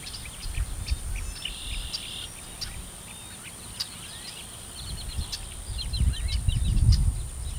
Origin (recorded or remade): recorded